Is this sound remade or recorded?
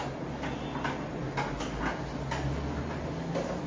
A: recorded